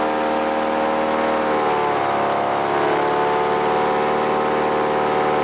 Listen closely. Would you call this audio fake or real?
real